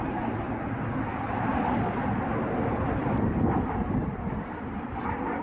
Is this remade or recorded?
recorded